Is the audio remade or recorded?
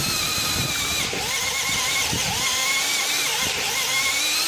remade